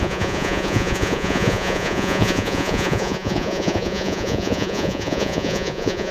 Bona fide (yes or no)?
no